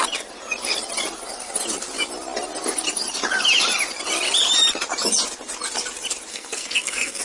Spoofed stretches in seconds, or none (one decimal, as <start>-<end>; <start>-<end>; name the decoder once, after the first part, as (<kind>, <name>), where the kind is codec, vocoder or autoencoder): 6.3-7.2 (codec, SNAC)